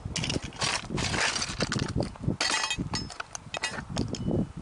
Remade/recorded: recorded